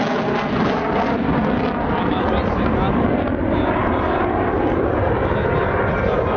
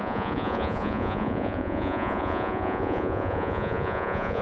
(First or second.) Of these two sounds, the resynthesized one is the second